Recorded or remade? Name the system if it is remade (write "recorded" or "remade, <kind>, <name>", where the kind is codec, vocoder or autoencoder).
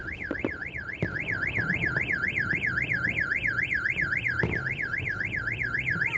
remade, vocoder, BigVGAN v2